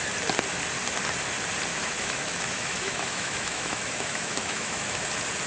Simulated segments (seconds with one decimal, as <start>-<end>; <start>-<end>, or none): 1.7-5.0